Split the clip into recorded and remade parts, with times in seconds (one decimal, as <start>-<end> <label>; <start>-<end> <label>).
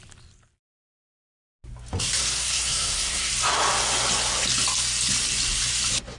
0.0-2.2 recorded; 2.2-3.3 remade; 3.3-6.2 recorded